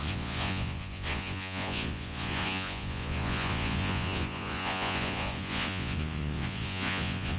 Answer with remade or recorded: remade